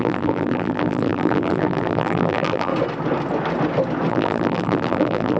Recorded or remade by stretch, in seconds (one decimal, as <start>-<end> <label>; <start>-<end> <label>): 0.0-2.7 remade; 2.7-4.1 recorded; 4.1-5.4 remade